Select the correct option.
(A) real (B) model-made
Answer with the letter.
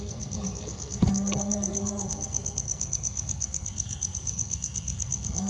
B